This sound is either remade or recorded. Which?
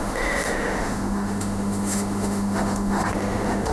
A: remade